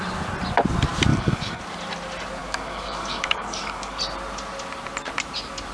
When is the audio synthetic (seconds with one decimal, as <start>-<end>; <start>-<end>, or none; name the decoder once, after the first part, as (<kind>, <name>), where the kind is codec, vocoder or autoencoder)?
1.1-1.6 (codec, DAC); 2.4-4.0